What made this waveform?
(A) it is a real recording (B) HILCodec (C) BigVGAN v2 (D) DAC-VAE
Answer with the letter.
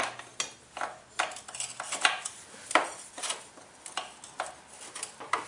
A